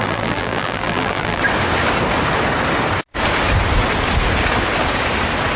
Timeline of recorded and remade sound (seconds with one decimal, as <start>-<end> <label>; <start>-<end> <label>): 0.0-1.4 remade; 1.4-5.6 recorded